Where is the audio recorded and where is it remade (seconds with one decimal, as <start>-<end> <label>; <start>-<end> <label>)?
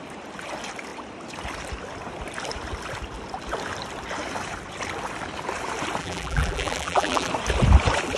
0.0-6.0 recorded; 6.0-7.3 remade; 7.3-8.2 recorded